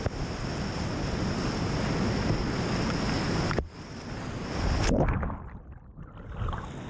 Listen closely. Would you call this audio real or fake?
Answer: real